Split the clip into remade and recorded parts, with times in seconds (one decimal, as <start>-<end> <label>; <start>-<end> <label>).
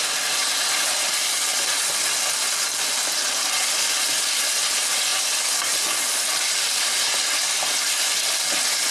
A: 0.0-8.9 recorded